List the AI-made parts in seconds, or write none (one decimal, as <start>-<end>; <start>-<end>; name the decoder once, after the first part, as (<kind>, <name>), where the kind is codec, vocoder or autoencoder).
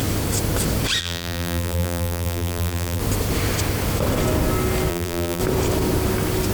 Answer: 1.0-3.0 (vocoder, BigVGAN v2); 4.9-5.4